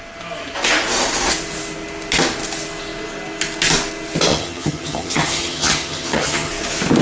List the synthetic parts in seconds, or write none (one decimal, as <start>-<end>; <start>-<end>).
4.3-6.5